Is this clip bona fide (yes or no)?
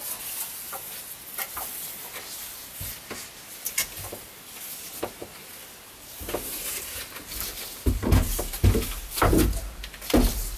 yes